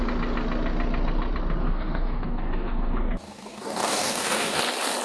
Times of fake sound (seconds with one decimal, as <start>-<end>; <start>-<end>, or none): 1.6-4.6